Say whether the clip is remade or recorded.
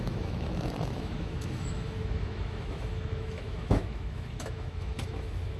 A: remade